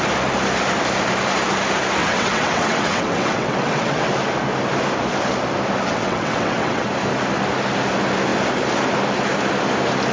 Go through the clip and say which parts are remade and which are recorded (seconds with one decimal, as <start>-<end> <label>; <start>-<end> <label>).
0.0-2.0 recorded; 2.0-4.1 remade; 4.1-5.9 recorded; 5.9-6.9 remade; 6.9-10.1 recorded